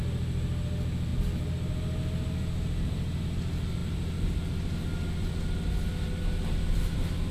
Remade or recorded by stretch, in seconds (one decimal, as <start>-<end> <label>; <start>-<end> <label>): 0.0-7.3 recorded